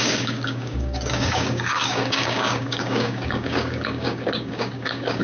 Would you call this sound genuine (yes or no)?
no